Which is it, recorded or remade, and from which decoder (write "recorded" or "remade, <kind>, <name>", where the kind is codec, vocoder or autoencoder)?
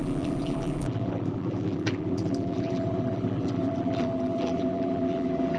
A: remade, vocoder, BigVGAN v2